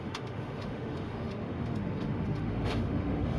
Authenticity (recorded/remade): remade